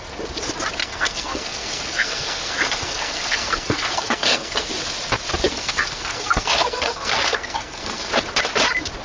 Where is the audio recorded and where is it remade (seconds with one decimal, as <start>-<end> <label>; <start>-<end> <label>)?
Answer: 0.0-0.8 recorded; 0.8-4.7 remade; 4.7-5.5 recorded; 5.5-8.1 remade; 8.1-9.0 recorded